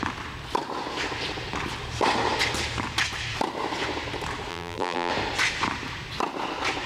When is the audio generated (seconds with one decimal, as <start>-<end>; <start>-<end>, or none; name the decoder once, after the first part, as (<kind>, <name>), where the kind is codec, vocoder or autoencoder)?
4.5-5.1 (vocoder, BigVGAN v2)